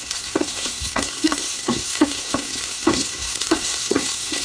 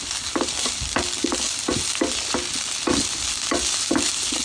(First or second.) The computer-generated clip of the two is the first